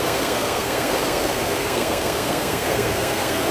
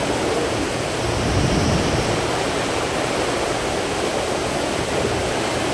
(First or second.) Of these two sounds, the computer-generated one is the first